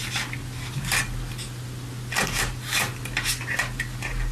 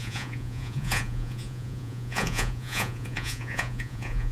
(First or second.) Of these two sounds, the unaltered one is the first